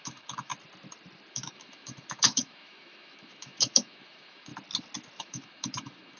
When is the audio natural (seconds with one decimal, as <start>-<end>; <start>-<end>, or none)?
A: 0.5-1.3; 4.5-5.2